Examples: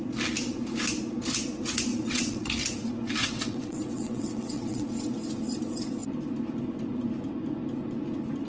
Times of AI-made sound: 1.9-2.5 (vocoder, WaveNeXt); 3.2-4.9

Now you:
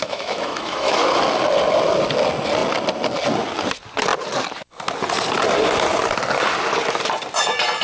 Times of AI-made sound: 0.0-1.2 (autoencoder, DAC-VAE)